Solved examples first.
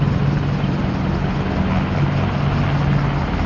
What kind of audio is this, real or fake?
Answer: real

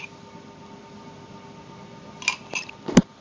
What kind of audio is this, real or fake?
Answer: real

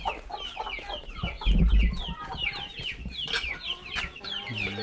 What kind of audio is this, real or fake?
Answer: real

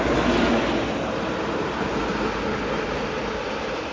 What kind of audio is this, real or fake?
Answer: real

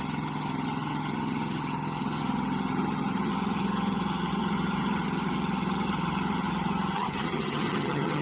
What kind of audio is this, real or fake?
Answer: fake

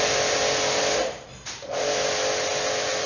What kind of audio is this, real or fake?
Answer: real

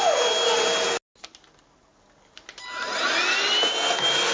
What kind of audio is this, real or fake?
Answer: real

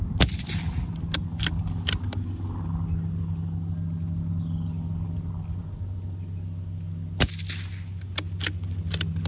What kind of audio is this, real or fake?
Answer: real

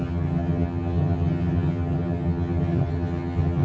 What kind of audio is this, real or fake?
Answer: fake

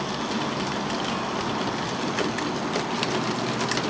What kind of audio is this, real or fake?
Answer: real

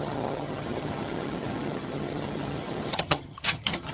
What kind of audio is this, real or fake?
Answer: fake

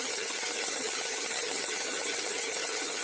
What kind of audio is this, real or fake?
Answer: fake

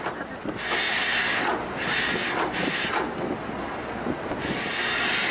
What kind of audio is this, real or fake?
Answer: real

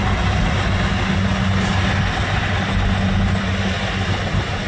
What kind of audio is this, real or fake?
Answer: real